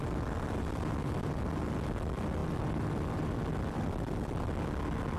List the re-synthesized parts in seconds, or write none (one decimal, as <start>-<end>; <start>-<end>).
2.4-4.1